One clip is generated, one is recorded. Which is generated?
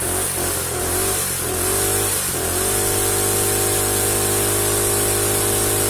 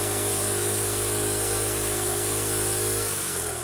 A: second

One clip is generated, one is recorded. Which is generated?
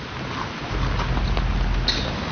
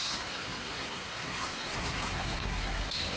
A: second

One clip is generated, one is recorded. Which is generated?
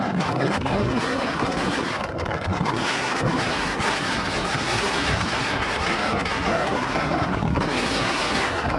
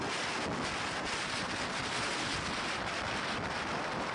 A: first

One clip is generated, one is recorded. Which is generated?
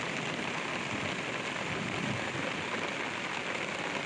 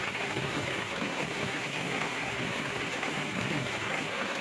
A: second